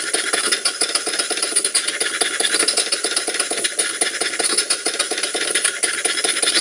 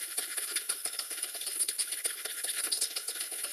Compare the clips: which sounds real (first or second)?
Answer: first